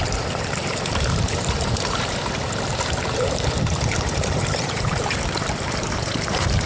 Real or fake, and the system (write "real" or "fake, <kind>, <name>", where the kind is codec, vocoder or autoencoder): fake, vocoder, BigVGAN v2